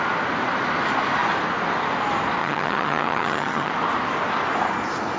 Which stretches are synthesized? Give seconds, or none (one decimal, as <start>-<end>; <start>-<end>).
2.4-3.7